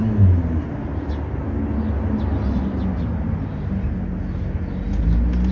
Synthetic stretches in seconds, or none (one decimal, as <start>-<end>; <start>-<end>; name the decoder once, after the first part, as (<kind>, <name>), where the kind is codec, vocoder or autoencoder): none

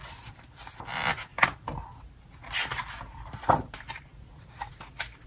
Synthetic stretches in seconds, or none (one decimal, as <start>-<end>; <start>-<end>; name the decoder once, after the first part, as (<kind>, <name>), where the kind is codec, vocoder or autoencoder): 0.0-0.7 (vocoder, BigVGAN v2); 4.1-4.7